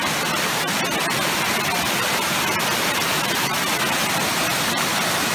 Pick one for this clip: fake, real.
real